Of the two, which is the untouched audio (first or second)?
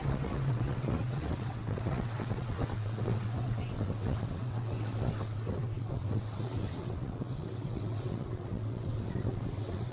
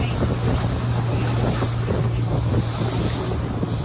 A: second